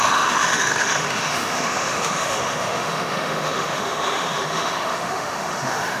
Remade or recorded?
remade